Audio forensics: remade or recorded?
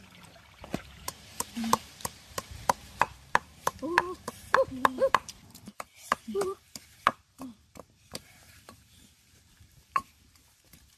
remade